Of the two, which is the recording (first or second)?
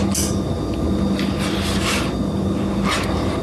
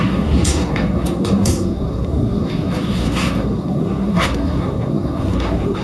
first